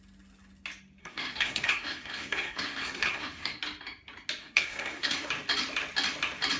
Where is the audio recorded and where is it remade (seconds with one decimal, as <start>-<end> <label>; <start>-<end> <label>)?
0.0-1.0 recorded; 1.0-3.6 remade; 3.6-4.4 recorded; 4.4-5.3 remade; 5.3-6.6 recorded